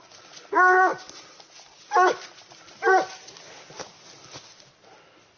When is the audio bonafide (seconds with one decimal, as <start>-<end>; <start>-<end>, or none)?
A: 0.0-5.4